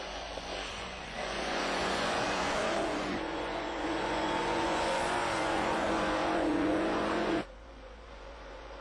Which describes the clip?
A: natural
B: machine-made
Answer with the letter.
B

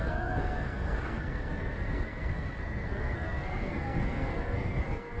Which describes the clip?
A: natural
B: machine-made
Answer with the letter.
B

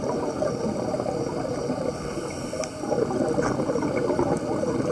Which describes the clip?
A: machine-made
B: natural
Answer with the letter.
B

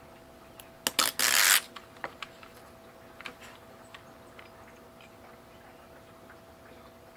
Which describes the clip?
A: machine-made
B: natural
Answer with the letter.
B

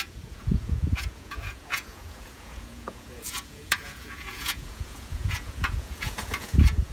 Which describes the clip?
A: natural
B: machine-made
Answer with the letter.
B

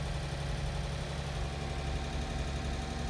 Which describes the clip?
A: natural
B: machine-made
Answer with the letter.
A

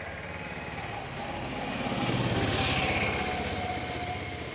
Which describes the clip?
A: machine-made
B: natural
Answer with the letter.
B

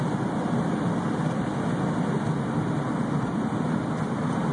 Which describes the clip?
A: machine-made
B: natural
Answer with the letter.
B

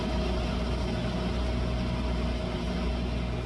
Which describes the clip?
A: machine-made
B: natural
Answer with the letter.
B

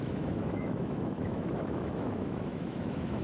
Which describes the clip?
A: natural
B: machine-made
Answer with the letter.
B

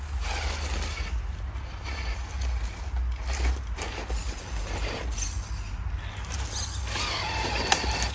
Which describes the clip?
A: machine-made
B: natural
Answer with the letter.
B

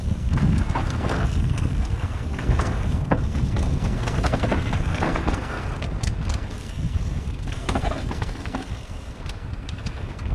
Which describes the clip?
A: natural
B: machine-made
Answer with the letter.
B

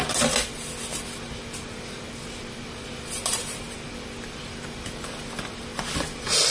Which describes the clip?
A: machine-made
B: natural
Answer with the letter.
B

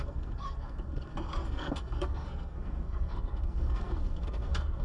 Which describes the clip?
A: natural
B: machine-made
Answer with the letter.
B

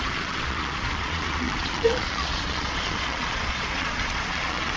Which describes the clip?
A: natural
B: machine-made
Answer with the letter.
B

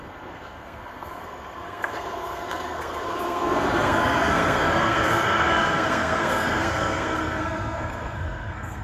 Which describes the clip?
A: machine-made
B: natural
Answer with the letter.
A